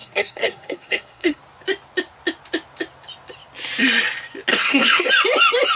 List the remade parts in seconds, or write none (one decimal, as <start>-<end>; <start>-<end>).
0.0-1.4; 4.5-5.1